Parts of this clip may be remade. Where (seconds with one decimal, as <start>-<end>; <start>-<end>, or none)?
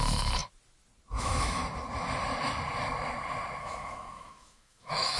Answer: 0.0-0.4; 1.2-1.6; 3.6-5.2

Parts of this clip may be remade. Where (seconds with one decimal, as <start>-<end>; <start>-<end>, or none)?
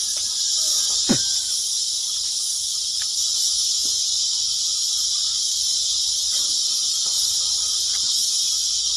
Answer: 6.8-8.1